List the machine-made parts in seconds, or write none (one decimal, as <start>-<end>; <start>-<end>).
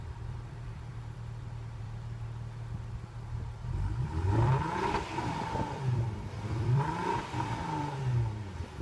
0.0-8.8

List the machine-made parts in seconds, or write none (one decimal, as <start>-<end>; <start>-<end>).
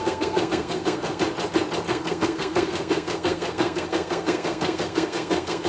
0.0-1.2; 1.9-5.7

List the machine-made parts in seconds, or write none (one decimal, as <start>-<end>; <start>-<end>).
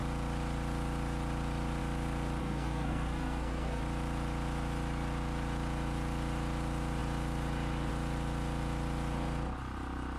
2.4-3.8